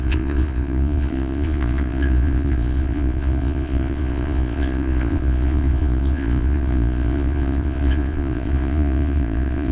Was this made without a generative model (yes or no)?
no